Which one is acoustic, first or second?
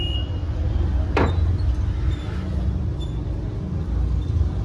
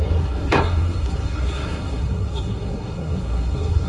first